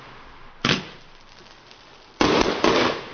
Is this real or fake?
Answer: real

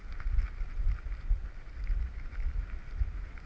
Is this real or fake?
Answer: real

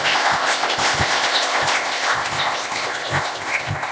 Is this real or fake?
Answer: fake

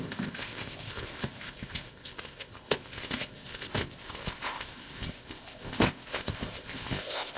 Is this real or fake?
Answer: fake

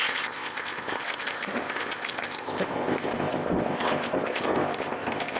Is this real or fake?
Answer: fake